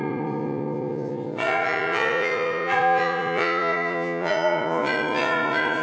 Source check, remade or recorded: remade